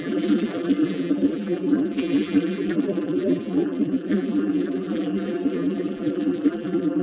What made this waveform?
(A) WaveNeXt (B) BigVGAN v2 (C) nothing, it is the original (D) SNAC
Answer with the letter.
B